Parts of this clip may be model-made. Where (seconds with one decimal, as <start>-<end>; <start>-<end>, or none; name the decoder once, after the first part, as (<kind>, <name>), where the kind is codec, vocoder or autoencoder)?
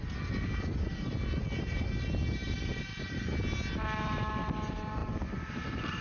none